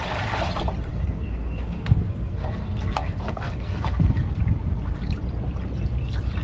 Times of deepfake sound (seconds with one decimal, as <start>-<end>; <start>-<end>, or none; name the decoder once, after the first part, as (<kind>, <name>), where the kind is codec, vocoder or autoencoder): 0.9-4.4 (codec, SNAC)